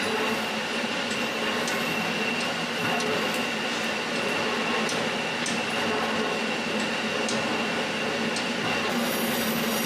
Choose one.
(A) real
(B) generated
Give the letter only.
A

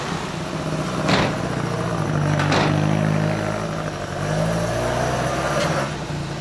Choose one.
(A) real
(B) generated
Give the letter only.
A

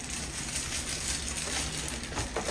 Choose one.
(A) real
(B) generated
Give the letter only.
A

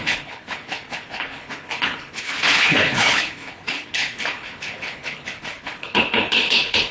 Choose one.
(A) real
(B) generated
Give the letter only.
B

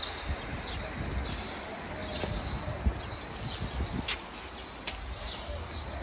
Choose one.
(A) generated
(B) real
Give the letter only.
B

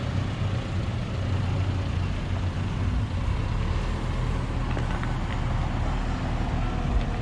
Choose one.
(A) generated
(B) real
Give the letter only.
B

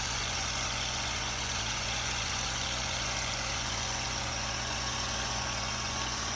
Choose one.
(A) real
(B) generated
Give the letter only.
B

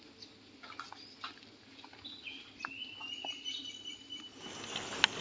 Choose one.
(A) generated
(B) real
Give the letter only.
B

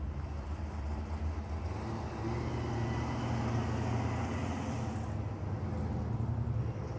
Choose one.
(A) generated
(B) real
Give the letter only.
B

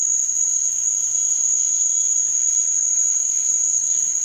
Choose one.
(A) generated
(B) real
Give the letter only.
A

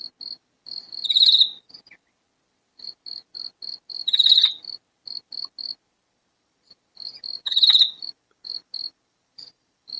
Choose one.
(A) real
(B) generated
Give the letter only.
A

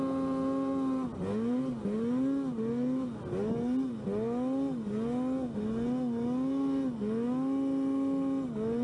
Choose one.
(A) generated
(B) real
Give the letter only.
B